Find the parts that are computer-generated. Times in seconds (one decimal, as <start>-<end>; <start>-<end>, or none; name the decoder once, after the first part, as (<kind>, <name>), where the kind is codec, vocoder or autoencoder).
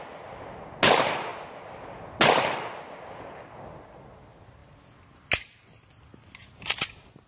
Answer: none